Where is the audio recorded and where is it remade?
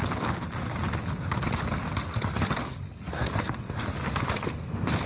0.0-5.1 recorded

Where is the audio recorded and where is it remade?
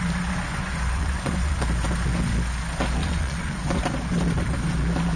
0.0-0.5 recorded; 0.5-1.6 remade; 1.6-3.0 recorded; 3.0-3.8 remade; 3.8-5.2 recorded